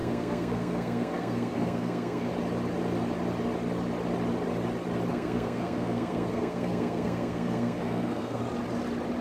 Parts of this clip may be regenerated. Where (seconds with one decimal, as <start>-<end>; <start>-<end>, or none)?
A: 0.0-2.3; 5.1-8.4